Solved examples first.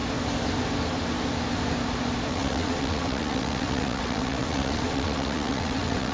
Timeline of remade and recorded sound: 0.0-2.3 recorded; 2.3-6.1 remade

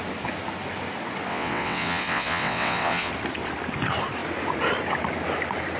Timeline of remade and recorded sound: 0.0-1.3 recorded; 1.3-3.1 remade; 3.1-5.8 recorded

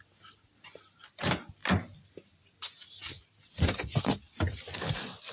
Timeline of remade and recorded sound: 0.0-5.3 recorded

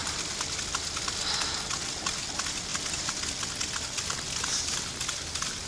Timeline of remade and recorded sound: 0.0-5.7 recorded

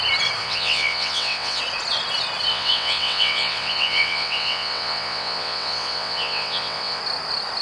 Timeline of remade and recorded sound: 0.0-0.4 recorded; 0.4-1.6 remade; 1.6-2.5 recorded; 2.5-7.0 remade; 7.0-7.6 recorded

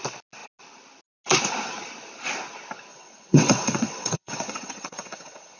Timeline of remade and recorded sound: 0.0-2.9 recorded; 2.9-5.6 remade

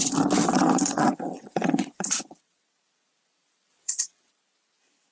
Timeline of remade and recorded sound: 0.0-0.4 recorded; 0.4-2.6 remade; 2.6-3.7 recorded; 3.7-4.3 remade; 4.3-5.1 recorded